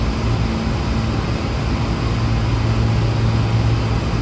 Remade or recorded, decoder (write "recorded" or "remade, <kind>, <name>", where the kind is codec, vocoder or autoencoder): recorded